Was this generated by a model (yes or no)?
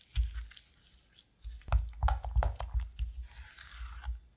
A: no